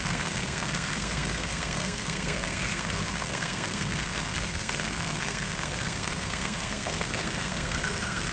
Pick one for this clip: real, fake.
fake